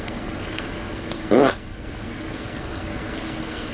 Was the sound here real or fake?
fake